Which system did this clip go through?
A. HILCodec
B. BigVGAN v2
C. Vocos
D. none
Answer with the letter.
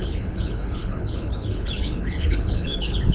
A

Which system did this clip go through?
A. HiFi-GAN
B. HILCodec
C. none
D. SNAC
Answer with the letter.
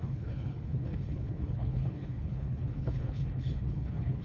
B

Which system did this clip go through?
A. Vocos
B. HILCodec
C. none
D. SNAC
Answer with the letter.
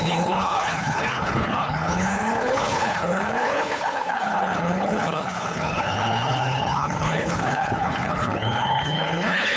B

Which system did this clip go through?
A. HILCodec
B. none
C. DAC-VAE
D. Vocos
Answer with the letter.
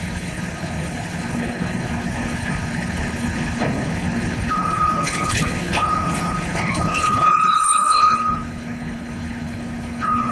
A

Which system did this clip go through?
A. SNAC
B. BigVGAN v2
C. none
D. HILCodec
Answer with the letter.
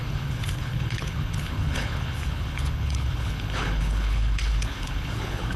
D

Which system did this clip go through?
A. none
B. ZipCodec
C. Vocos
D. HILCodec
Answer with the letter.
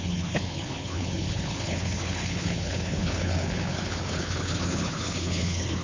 D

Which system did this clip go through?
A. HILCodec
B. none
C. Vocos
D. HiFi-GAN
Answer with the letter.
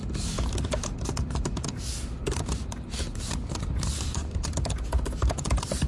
B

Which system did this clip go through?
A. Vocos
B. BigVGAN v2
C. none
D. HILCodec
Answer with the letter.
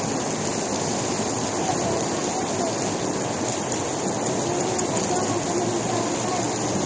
C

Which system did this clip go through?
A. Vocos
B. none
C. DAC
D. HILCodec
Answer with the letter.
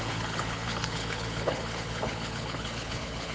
D